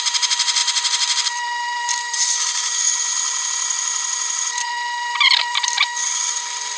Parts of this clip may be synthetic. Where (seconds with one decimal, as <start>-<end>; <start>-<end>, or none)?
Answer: 0.0-6.8